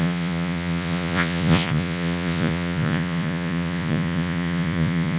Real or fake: fake